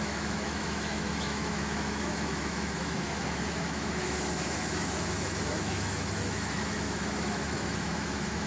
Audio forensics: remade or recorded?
remade